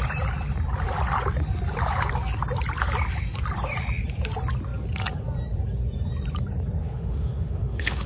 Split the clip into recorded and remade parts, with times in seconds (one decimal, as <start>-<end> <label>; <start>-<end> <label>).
0.0-6.8 recorded; 6.8-8.1 remade